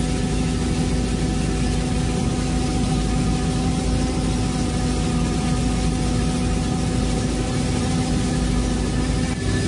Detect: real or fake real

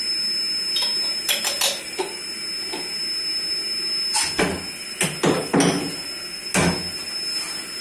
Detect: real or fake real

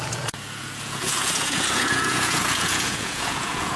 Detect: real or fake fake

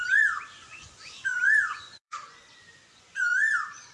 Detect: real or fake fake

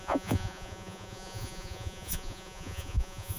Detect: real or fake fake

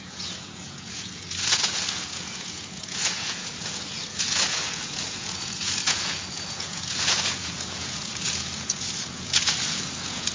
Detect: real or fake fake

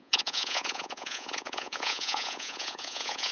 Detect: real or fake fake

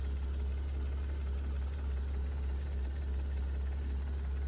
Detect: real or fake real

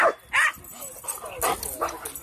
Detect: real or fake real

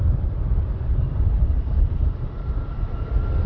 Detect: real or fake real